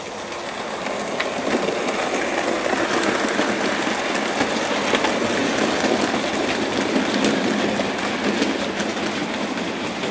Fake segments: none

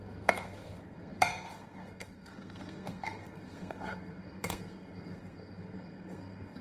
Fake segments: 0.0-6.6 (codec, SNAC)

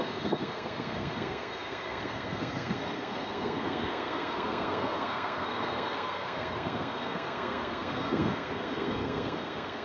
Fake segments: 0.0-9.8 (codec, SNAC)

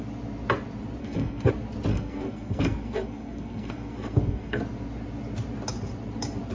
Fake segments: 1.0-1.5 (codec, SNAC); 1.9-4.6